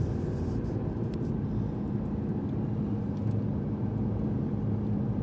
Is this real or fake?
real